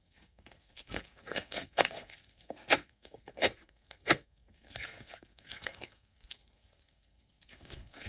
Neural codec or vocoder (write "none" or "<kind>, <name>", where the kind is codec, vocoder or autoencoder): codec, SNAC